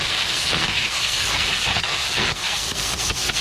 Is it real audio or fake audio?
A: fake